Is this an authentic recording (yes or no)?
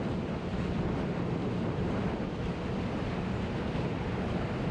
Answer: no